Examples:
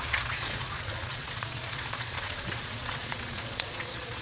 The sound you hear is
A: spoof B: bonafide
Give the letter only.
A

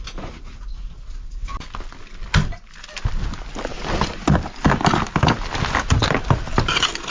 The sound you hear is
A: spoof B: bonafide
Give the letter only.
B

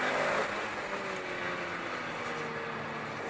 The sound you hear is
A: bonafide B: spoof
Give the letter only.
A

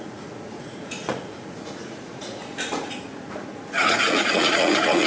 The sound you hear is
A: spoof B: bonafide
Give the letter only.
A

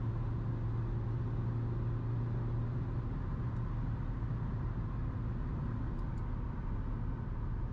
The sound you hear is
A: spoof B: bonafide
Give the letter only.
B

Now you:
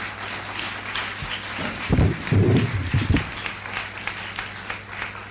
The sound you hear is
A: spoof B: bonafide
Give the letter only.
B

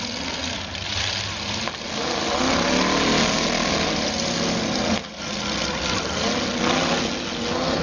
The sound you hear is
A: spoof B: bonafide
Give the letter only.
B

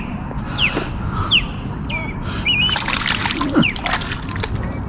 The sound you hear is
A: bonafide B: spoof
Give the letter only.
A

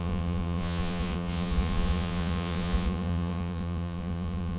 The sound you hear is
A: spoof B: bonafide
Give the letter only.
A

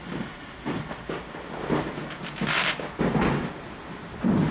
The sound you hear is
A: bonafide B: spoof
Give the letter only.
A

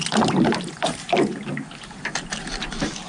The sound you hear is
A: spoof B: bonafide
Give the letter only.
B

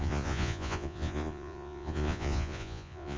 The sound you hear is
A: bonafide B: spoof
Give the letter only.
B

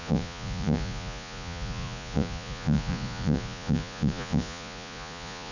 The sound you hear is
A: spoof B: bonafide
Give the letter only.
A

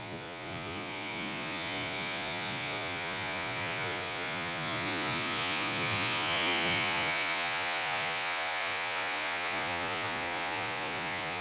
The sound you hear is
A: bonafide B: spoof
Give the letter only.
B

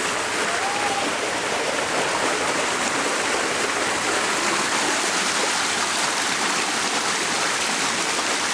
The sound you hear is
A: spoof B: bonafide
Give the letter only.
B